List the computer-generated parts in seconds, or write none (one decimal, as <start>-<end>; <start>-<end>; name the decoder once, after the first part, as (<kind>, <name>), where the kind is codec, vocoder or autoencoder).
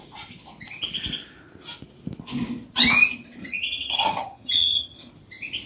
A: 3.4-5.1 (vocoder, HiFi-GAN)